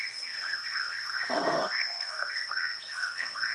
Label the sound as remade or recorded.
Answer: remade